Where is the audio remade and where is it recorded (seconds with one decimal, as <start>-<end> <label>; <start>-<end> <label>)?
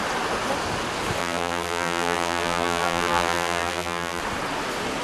0.0-1.2 recorded; 1.2-4.2 remade; 4.2-5.0 recorded